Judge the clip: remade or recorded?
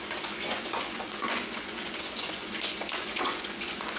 remade